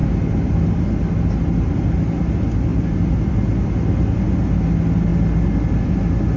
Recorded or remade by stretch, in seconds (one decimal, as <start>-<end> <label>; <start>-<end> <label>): 0.0-2.7 recorded; 2.7-3.3 remade; 3.3-6.4 recorded